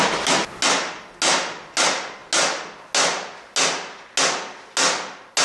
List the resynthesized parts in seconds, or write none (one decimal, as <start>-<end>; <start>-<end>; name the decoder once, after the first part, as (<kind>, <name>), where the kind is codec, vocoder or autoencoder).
none